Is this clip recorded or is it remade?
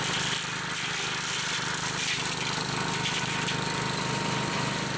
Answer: recorded